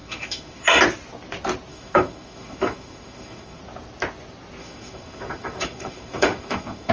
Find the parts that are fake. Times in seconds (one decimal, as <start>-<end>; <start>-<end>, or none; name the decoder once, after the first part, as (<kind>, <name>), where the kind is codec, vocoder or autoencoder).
0.0-0.8 (autoencoder, DAC-VAE); 1.7-3.6; 4.6-6.9